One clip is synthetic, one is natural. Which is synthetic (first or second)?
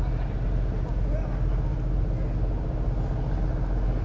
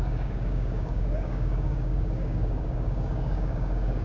second